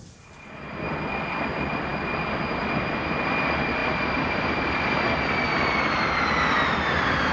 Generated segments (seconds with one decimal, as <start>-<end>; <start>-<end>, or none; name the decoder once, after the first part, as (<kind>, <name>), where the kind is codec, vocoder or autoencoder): 3.8-4.9 (vocoder, BigVGAN v2)